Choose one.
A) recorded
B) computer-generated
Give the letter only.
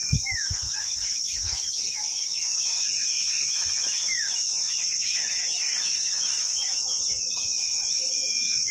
B